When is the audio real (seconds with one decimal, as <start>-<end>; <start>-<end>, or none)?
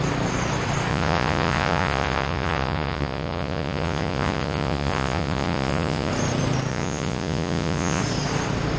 0.0-0.9; 6.1-6.7; 8.0-8.8